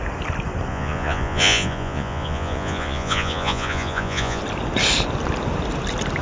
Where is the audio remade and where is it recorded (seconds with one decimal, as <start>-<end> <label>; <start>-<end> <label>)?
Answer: 0.0-0.7 recorded; 0.7-4.4 remade; 4.4-6.2 recorded